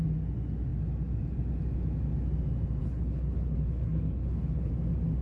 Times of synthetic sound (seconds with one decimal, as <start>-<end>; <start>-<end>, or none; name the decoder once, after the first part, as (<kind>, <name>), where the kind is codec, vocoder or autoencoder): 2.8-4.7 (codec, HILCodec)